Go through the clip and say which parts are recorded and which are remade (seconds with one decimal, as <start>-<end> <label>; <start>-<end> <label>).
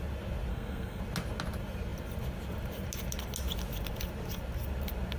0.0-0.5 recorded; 0.5-1.0 remade; 1.0-5.2 recorded